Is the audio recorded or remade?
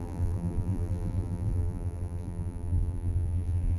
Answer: remade